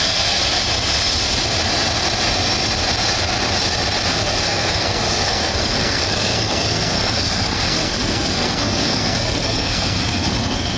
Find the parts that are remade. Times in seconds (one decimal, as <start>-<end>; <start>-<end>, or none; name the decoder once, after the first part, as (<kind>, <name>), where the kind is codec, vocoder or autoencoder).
0.0-0.4 (codec, SNAC); 4.1-10.8